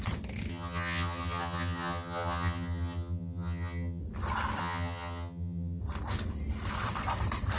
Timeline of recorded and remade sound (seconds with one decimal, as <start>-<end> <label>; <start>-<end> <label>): 0.0-0.5 recorded; 0.5-4.0 remade; 4.0-4.6 recorded; 4.6-5.8 remade; 5.8-7.6 recorded